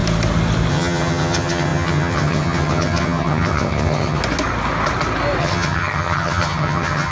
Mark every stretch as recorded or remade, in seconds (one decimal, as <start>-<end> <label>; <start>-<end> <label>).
0.0-0.7 recorded; 0.7-4.2 remade; 4.2-5.4 recorded; 5.4-7.1 remade